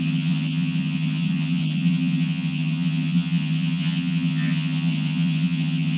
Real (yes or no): no